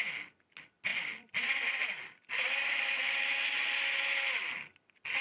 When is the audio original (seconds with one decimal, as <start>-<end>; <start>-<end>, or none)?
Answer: 0.0-0.9; 1.8-2.3; 3.2-5.2